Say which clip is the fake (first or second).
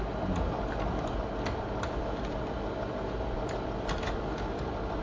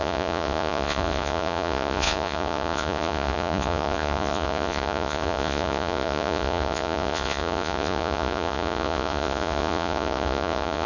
second